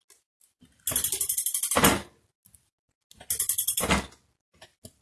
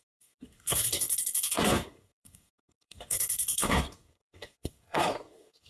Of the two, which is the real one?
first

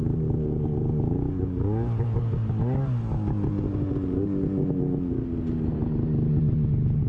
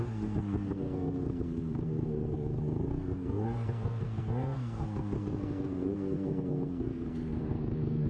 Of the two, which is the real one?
first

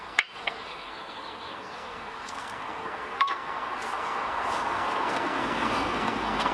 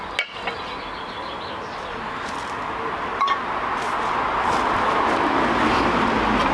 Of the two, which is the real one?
second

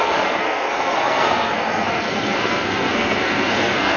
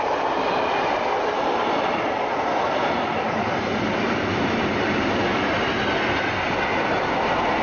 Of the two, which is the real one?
second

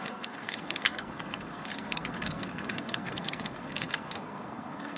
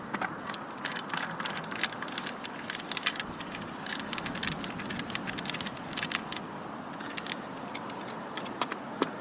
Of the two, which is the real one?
second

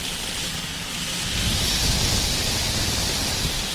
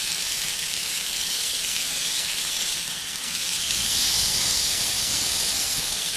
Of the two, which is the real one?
first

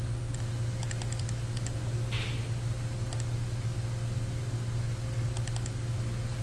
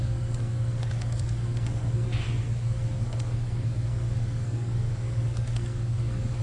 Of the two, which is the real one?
first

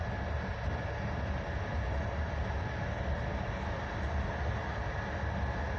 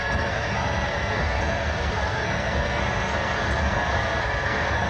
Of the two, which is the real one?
first